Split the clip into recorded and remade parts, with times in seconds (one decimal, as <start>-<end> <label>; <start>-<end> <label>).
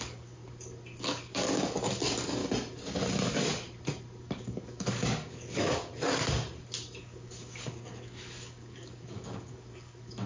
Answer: 0.0-0.4 remade; 0.4-1.0 recorded; 1.0-2.4 remade; 2.4-4.2 recorded; 4.2-5.9 remade; 5.9-7.0 recorded; 7.0-10.3 remade